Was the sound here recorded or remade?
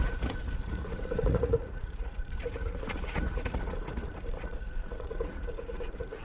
remade